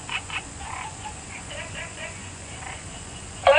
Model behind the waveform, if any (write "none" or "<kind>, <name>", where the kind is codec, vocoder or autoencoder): vocoder, Vocos